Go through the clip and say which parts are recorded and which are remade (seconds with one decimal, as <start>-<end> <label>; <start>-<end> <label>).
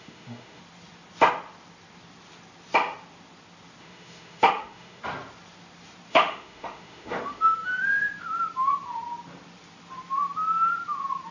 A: 0.0-0.6 remade; 0.6-3.8 recorded; 3.8-5.0 remade; 5.0-6.1 recorded; 6.1-7.7 remade; 7.7-11.3 recorded